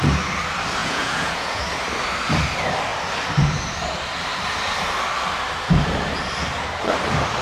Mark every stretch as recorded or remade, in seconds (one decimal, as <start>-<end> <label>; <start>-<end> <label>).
0.0-0.8 recorded; 0.8-1.6 remade; 1.6-7.4 recorded